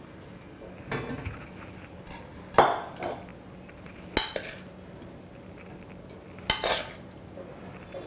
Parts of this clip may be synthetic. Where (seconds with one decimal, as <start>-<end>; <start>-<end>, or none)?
none